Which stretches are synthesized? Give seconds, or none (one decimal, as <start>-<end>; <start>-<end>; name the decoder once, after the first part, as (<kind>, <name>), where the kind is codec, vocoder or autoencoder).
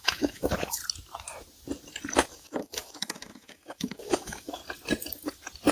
0.0-0.8 (autoencoder, DAC-VAE); 2.3-4.6